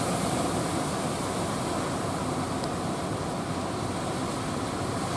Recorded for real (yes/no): yes